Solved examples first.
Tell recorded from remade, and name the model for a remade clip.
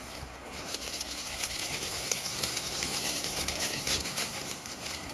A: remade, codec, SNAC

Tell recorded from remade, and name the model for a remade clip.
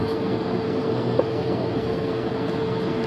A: remade, codec, SNAC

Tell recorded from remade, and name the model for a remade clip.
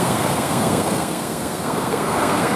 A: remade, codec, SNAC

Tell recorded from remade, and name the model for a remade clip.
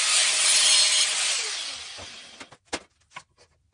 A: recorded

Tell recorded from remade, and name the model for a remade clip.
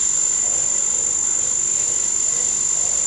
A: recorded